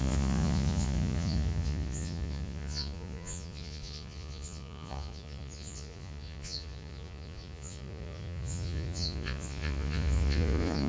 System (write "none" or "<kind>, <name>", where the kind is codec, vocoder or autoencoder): vocoder, Vocos